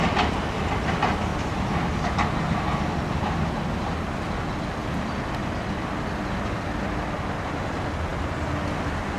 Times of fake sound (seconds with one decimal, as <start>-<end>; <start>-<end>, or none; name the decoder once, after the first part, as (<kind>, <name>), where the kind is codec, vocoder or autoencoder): 4.8-5.7 (vocoder, BigVGAN v2)